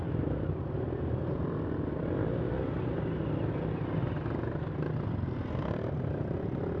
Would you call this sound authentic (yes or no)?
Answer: yes